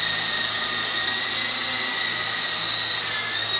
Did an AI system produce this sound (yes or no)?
no